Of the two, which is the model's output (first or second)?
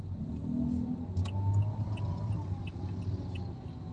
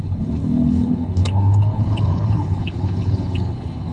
second